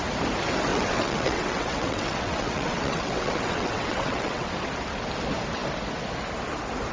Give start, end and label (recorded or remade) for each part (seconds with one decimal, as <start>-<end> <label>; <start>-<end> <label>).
0.0-0.7 recorded; 0.7-4.5 remade; 4.5-6.9 recorded